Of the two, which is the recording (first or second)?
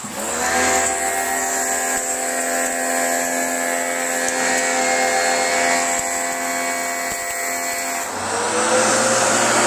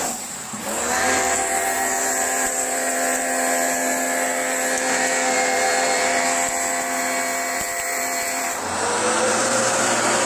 first